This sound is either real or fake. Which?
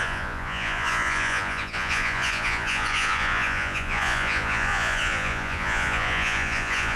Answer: fake